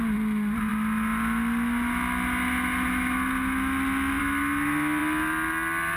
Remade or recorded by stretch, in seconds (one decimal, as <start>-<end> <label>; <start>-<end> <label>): 0.0-6.0 recorded